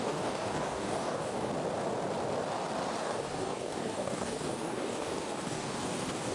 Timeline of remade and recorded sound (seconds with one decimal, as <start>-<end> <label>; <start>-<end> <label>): 0.0-1.5 remade; 1.5-3.0 recorded; 3.0-6.3 remade